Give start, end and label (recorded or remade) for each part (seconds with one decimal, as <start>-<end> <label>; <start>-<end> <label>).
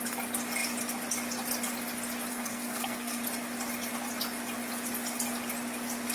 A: 0.0-2.3 recorded; 2.3-3.2 remade; 3.2-6.1 recorded